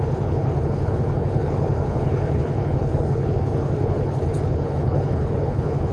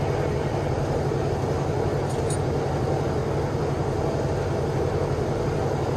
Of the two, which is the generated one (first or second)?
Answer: first